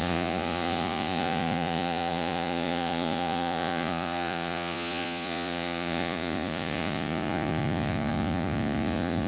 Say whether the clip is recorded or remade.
remade